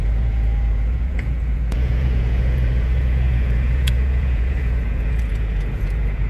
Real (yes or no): no